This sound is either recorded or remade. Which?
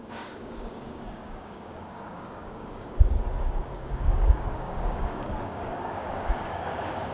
remade